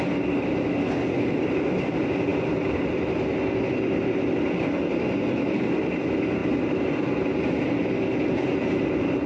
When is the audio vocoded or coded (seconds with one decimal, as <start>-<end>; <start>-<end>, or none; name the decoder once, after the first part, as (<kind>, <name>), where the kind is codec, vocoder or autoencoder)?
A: none